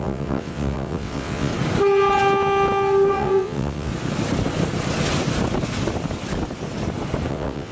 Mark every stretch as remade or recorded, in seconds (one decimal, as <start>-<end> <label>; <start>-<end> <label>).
0.0-1.5 remade; 1.5-3.1 recorded; 3.1-3.9 remade; 3.9-7.3 recorded; 7.3-7.7 remade